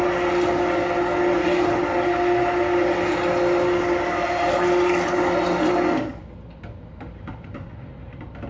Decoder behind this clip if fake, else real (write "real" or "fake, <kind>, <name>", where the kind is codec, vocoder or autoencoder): real